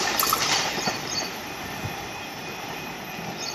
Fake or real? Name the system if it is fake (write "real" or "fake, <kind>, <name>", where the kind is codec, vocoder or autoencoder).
fake, vocoder, BigVGAN v2